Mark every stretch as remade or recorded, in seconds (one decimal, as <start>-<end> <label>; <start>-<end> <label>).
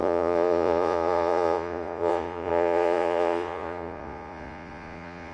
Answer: 0.0-5.3 remade